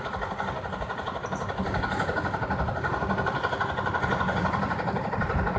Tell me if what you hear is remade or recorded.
remade